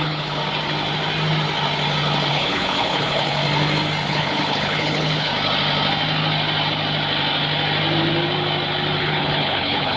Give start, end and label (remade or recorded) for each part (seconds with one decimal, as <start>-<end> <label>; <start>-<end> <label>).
0.0-0.4 remade; 0.4-2.3 recorded; 2.3-3.4 remade; 3.4-4.1 recorded; 4.1-5.3 remade; 5.3-9.0 recorded; 9.0-10.0 remade